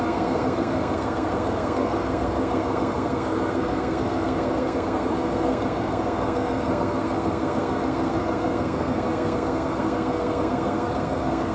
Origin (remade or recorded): remade